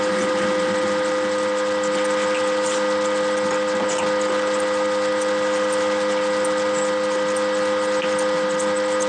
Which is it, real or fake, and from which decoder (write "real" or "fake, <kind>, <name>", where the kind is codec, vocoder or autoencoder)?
real